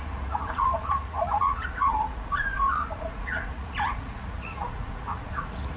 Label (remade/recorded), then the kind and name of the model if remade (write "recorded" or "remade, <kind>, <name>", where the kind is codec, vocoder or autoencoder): remade, vocoder, Vocos